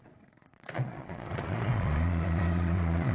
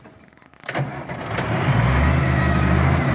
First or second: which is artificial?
first